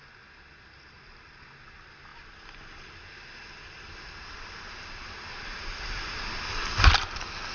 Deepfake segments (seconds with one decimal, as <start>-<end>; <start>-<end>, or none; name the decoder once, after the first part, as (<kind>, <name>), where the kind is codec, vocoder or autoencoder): none